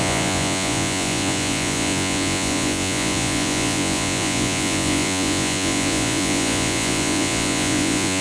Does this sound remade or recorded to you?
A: remade